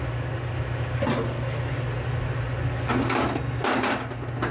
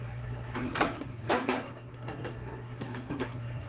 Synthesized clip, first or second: second